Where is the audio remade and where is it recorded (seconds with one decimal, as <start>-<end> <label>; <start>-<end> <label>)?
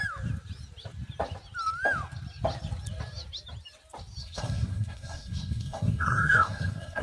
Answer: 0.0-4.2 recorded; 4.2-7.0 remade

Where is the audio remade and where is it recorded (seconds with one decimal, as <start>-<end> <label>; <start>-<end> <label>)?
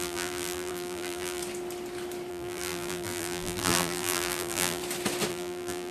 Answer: 0.0-1.4 remade; 1.4-2.3 recorded; 2.3-4.8 remade; 4.8-5.3 recorded; 5.3-5.9 remade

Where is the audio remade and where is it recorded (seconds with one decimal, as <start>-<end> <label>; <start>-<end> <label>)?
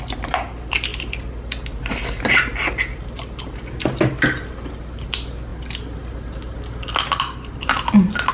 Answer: 0.0-8.3 recorded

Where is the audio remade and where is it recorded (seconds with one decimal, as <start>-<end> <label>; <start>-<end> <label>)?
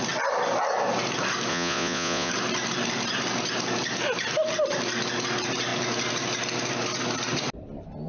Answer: 0.0-1.5 recorded; 1.5-2.3 remade; 2.3-8.1 recorded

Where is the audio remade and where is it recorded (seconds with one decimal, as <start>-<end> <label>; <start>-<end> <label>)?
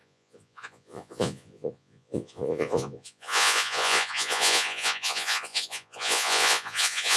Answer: 0.0-7.2 remade